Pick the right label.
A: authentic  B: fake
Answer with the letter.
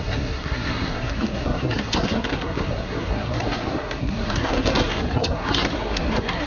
B